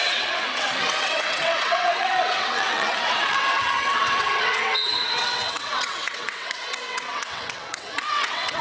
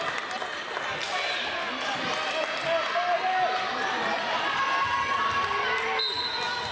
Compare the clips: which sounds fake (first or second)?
first